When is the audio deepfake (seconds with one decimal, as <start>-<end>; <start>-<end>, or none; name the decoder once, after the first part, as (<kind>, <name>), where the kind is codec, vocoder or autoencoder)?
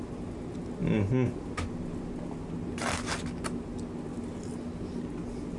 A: none